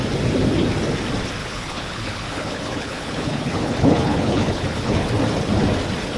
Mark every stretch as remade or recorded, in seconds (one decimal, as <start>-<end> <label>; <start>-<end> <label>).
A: 0.0-1.4 recorded; 1.4-5.1 remade; 5.1-6.2 recorded